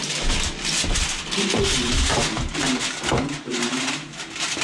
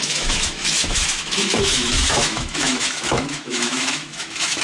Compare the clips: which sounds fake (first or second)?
second